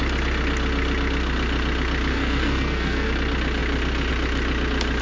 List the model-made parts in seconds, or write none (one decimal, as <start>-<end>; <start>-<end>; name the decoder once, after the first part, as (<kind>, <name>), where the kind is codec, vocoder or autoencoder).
2.1-3.1 (codec, SNAC)